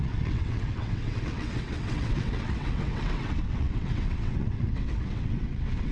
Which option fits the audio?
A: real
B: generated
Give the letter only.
B